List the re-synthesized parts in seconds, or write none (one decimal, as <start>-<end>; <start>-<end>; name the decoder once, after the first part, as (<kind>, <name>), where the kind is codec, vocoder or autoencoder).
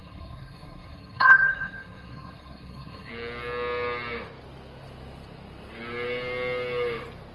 0.0-3.1 (codec, SNAC)